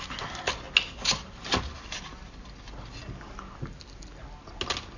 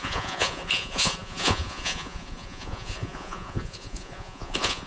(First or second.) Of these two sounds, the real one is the first